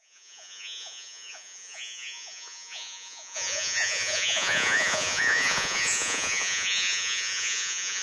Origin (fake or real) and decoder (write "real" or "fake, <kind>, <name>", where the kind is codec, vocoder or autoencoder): fake, vocoder, Vocos